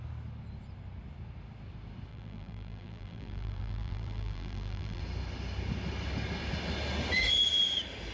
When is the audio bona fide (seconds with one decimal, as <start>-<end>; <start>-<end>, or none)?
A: 0.0-2.1; 5.0-8.1